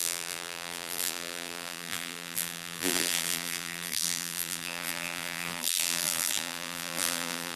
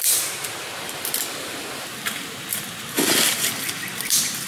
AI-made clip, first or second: first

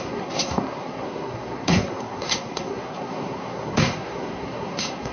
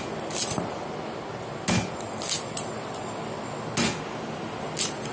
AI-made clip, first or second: first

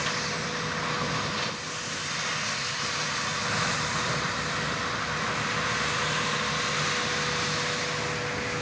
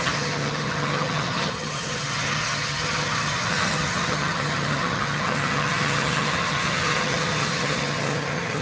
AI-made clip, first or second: second